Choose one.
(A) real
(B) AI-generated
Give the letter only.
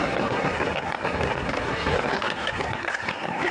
B